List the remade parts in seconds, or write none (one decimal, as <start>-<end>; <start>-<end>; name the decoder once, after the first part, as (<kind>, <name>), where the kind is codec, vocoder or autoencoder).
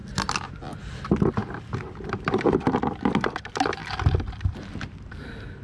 none